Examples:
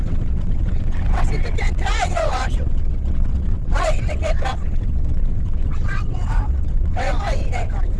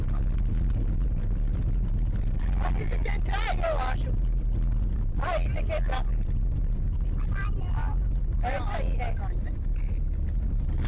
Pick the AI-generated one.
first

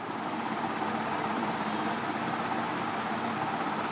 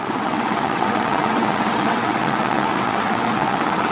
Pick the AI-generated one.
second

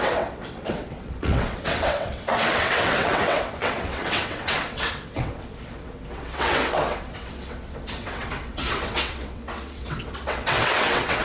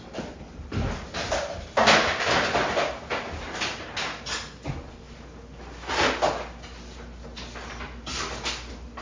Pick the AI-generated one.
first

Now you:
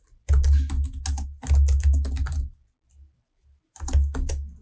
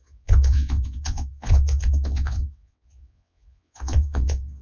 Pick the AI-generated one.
second